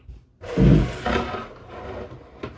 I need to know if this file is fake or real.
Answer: real